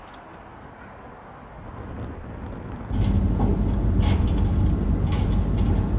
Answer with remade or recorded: recorded